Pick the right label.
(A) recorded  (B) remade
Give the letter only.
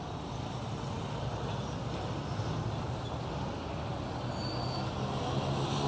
A